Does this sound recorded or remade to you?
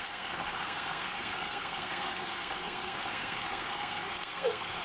remade